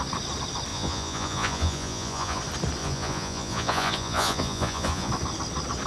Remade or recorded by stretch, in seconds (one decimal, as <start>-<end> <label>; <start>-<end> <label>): 0.0-0.7 recorded; 0.7-2.4 remade; 2.4-2.8 recorded; 2.8-5.1 remade; 5.1-5.9 recorded